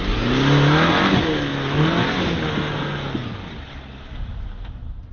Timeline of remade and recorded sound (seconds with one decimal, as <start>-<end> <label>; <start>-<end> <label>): 0.0-5.1 recorded